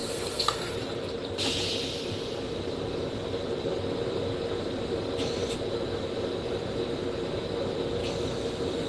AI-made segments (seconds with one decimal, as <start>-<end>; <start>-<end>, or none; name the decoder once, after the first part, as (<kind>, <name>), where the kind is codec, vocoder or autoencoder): 0.0-0.7 (codec, SNAC)